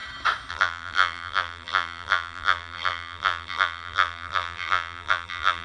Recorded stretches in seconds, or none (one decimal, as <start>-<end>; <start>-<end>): 0.0-0.5